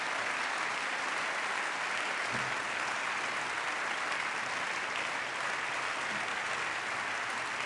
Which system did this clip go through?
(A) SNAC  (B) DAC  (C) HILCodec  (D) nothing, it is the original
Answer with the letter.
D